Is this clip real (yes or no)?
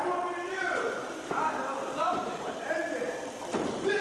no